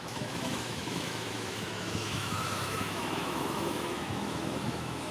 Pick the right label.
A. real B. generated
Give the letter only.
B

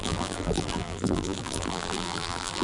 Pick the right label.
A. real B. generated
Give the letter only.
B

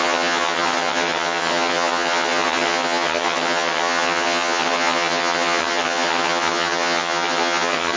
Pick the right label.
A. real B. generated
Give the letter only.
B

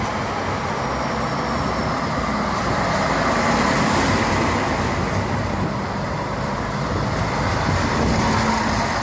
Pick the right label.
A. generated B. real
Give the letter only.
B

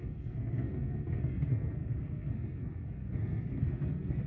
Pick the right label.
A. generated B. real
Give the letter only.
A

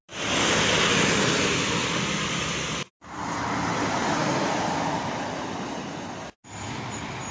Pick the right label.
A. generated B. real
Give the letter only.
B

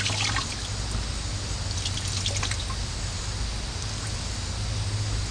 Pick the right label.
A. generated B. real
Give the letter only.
B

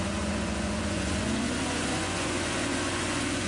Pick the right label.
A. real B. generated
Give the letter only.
B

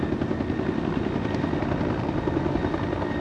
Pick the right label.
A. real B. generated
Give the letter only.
A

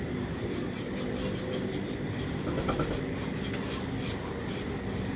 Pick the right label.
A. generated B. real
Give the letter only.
B